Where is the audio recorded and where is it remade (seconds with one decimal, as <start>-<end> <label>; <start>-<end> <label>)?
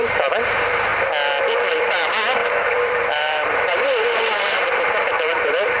0.0-0.9 remade; 0.9-1.8 recorded; 1.8-5.8 remade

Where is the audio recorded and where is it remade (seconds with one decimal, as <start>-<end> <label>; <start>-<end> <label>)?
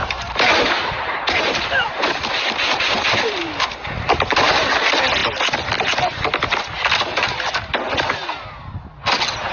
0.0-4.8 remade; 4.8-9.5 recorded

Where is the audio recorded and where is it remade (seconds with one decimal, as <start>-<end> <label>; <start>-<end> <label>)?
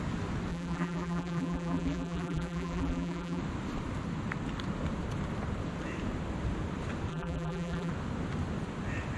0.0-0.5 recorded; 0.5-3.4 remade; 3.4-7.1 recorded; 7.1-7.9 remade; 7.9-9.2 recorded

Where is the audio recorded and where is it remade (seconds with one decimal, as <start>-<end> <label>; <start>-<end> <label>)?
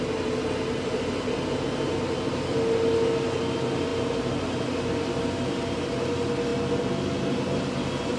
0.0-8.2 recorded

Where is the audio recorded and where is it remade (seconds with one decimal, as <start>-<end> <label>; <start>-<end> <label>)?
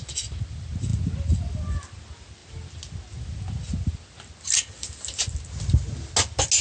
0.0-6.6 recorded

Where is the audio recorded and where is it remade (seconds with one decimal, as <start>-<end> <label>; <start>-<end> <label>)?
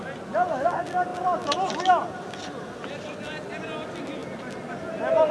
0.0-4.2 recorded; 4.2-4.8 remade; 4.8-5.3 recorded